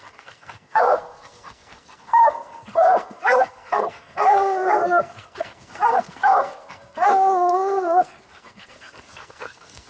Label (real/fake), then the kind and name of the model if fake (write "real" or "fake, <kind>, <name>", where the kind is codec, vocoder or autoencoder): fake, codec, SNAC